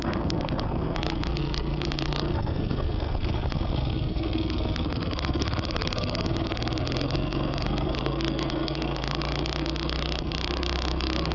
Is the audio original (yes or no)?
no